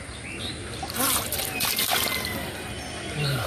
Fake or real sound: real